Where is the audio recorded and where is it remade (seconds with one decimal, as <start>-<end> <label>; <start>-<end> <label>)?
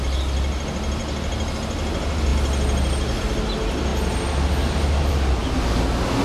0.0-6.2 recorded